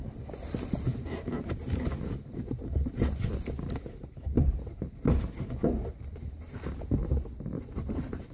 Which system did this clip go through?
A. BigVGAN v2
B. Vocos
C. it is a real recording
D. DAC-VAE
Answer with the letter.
C